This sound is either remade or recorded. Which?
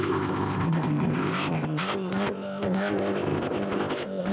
remade